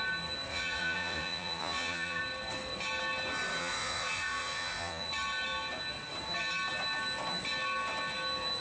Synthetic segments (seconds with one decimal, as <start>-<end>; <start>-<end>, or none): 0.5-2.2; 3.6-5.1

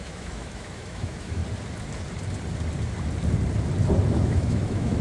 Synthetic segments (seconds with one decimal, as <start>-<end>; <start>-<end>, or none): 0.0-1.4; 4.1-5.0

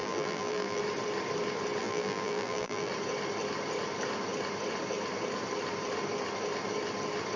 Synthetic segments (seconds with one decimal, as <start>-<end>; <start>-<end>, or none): 0.0-0.8; 1.8-2.9

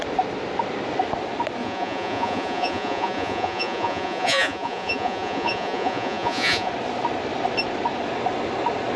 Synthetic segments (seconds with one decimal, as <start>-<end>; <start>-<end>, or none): 1.6-6.7

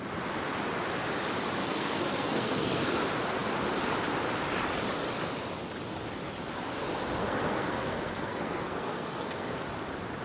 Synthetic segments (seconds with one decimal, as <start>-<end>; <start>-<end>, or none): 1.6-3.0; 7.2-9.6